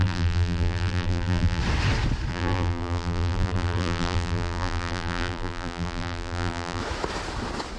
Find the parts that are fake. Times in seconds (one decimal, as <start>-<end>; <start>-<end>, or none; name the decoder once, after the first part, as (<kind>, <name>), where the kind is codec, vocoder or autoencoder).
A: 0.0-1.6 (vocoder, BigVGAN v2); 2.3-6.8